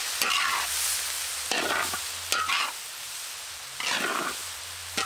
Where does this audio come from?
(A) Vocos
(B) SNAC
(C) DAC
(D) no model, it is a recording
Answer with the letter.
D